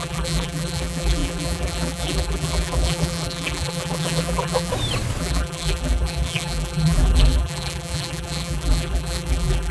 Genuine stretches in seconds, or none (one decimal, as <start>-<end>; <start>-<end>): 4.7-5.2